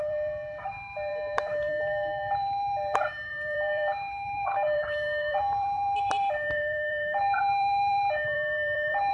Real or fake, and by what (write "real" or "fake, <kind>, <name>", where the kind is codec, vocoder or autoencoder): fake, vocoder, BigVGAN v2